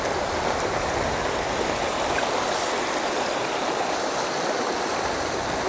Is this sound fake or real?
real